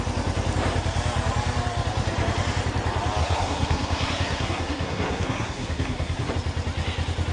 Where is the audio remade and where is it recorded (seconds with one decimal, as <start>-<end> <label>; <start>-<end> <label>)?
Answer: 0.0-3.2 recorded; 3.2-6.3 remade; 6.3-7.3 recorded